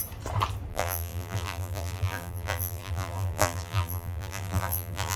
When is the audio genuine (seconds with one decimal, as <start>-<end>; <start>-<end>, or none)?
0.0-0.7